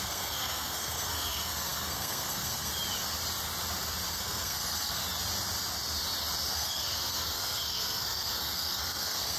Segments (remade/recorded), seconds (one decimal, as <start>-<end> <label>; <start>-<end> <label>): 0.0-2.7 remade; 2.7-4.1 recorded; 4.1-5.0 remade; 5.0-6.5 recorded; 6.5-9.4 remade